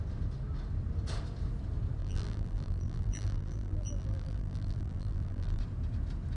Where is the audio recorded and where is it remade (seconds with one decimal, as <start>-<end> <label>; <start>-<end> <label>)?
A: 0.0-2.0 recorded; 2.0-5.6 remade; 5.6-6.4 recorded